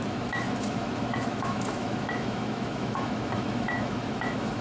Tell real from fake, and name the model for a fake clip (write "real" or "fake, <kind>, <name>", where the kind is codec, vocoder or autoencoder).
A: fake, autoencoder, DAC-VAE